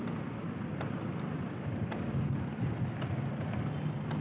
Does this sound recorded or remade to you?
recorded